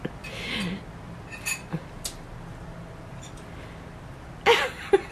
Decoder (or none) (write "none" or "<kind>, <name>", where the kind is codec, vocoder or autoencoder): none